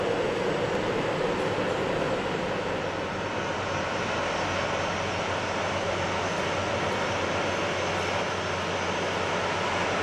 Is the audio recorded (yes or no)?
yes